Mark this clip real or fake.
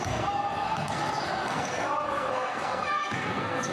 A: fake